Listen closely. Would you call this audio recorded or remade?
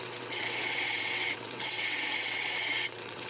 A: remade